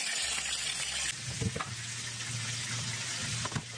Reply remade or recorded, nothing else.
recorded